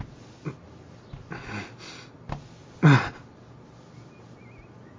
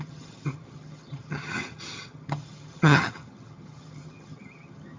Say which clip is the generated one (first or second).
second